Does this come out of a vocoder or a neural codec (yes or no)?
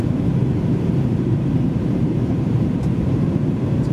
yes